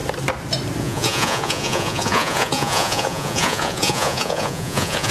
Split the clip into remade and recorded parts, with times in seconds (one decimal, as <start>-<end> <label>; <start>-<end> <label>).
0.0-0.8 recorded; 0.8-5.1 remade